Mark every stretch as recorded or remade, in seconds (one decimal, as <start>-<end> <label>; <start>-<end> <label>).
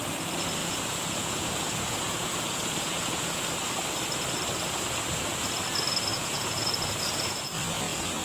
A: 0.0-0.6 recorded; 0.6-3.4 remade; 3.4-6.1 recorded; 6.1-7.5 remade; 7.5-8.2 recorded